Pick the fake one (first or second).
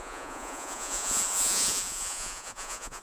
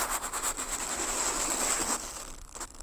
first